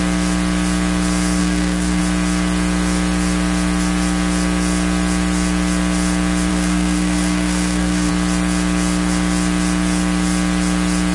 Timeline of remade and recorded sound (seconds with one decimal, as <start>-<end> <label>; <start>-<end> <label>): 0.0-1.4 recorded; 1.4-2.0 remade; 2.0-6.5 recorded; 6.5-8.1 remade; 8.1-11.1 recorded